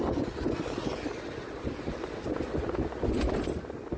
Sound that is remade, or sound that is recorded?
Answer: recorded